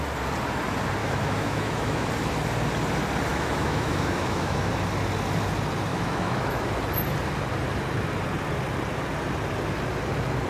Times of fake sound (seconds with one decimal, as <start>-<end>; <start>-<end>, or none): 1.0-2.1; 3.3-4.7; 5.9-6.7